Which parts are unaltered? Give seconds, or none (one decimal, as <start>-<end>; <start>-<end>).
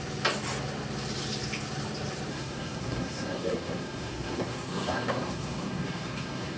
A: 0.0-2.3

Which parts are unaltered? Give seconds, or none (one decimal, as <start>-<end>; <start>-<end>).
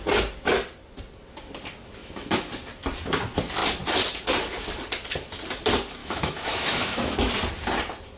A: 0.0-2.0; 2.5-6.0; 7.3-8.2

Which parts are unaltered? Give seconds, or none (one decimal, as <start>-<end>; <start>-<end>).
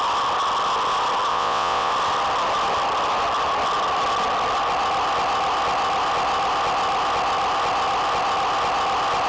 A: 0.0-1.3; 1.9-9.3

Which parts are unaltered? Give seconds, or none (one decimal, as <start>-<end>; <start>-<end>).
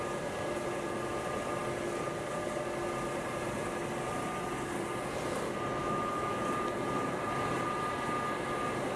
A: 0.0-5.8; 6.4-9.0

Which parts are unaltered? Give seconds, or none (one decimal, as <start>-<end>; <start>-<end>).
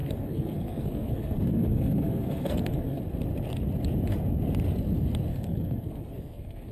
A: 3.0-5.3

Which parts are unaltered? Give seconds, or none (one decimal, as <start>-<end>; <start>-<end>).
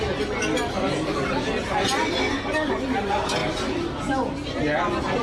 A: 0.0-5.2